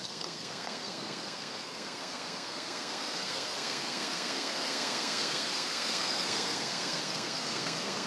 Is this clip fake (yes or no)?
yes